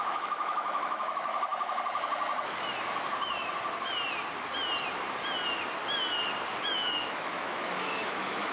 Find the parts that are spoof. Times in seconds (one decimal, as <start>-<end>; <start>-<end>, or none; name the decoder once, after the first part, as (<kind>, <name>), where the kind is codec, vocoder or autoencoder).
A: 0.0-1.5 (autoencoder, DAC-VAE); 6.6-8.5